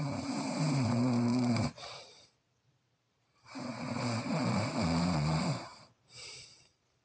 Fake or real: fake